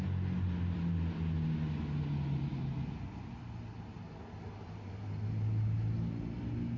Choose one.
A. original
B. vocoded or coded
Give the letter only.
A